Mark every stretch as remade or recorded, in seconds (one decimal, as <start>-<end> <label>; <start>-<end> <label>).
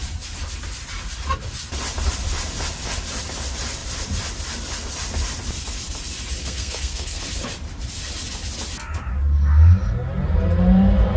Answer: 0.0-6.4 recorded; 6.4-7.2 remade; 7.2-11.2 recorded